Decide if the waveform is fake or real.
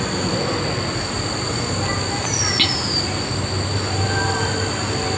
real